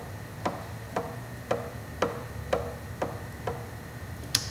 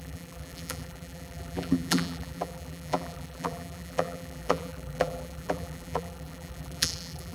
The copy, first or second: second